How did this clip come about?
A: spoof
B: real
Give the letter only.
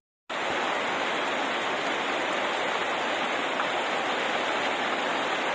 B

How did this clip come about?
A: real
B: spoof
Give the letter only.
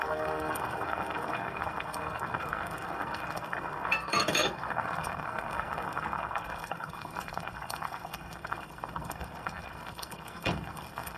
B